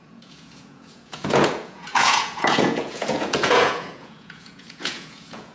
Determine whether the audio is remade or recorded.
remade